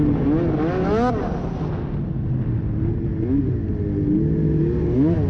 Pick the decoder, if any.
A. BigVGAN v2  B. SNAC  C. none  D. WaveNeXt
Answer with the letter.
C